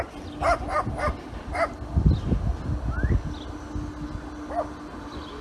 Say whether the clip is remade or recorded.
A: recorded